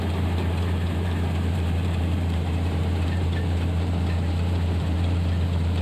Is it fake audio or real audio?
fake